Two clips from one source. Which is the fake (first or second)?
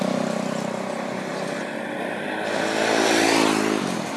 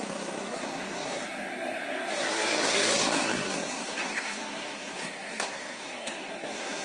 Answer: second